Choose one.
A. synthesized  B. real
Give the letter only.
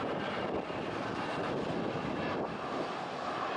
A